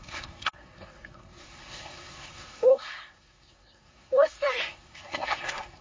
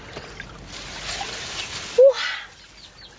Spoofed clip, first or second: first